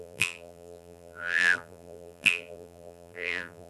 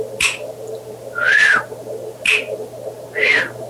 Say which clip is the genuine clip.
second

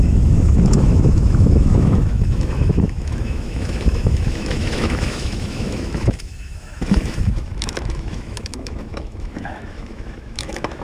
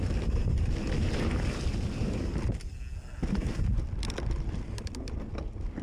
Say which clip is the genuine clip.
second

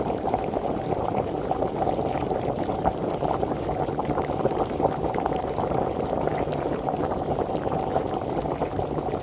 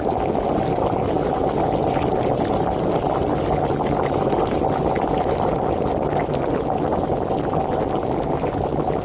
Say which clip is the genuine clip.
second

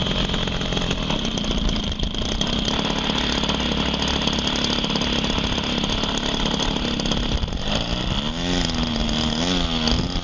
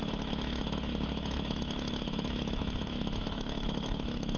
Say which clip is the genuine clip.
first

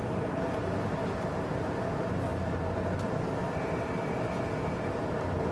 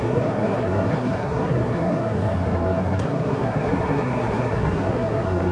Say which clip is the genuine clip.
first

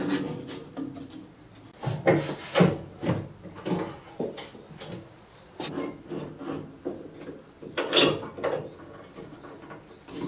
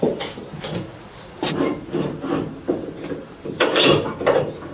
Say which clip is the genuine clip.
first